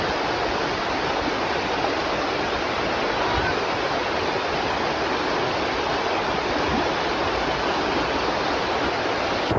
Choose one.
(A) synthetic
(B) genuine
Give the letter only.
B